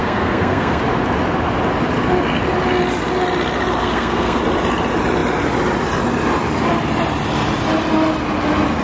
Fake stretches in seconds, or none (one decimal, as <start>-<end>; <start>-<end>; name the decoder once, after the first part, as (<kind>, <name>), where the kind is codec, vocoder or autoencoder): 0.0-0.8 (codec, SNAC); 3.8-4.4